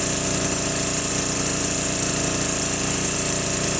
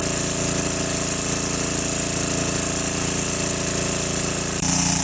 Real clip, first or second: second